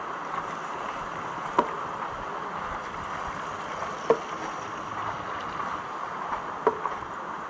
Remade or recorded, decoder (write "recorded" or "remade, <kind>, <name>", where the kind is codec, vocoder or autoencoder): recorded